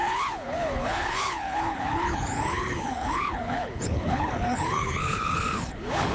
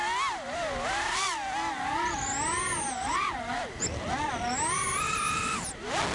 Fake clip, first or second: first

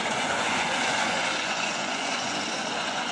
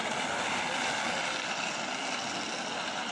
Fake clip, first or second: first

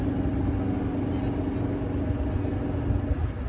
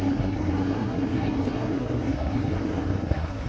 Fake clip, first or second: second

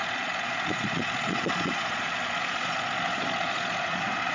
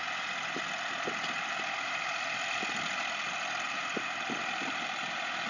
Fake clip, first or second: first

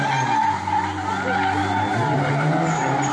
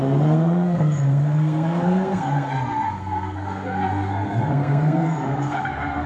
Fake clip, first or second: second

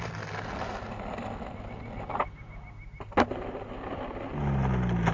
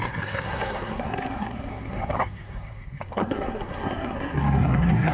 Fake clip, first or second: second